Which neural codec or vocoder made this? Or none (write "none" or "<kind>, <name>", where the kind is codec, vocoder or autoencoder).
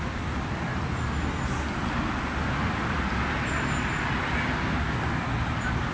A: none